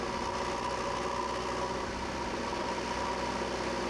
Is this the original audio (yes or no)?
yes